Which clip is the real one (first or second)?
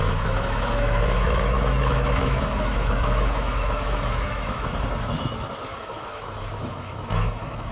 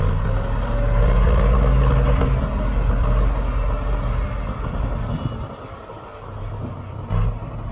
second